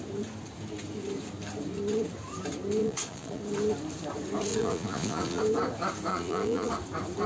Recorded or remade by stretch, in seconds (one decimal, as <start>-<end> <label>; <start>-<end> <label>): 0.0-2.8 recorded; 2.8-3.4 remade; 3.4-4.5 recorded; 4.5-5.4 remade; 5.4-6.1 recorded; 6.1-6.7 remade; 6.7-7.3 recorded